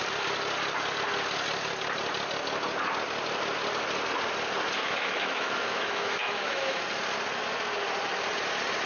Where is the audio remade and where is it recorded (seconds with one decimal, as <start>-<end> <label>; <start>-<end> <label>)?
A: 0.0-4.8 recorded; 4.8-6.8 remade; 6.8-8.9 recorded